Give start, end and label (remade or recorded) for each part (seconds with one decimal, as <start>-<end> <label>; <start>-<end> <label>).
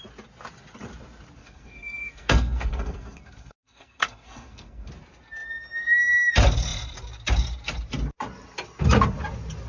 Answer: 0.0-1.4 recorded; 1.4-4.9 remade; 4.9-9.7 recorded